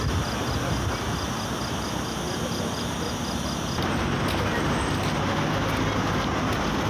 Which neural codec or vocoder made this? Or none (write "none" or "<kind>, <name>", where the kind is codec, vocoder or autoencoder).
none